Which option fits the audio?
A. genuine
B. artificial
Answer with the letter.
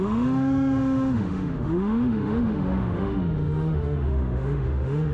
B